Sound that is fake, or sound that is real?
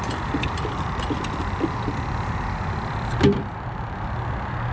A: real